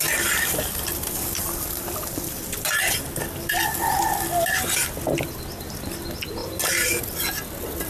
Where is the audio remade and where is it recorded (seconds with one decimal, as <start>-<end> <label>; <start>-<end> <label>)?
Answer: 0.0-6.4 recorded; 6.4-7.0 remade; 7.0-7.9 recorded